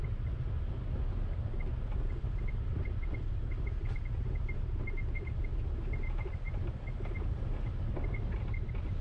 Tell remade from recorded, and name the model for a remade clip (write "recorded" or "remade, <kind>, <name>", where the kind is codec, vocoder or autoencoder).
recorded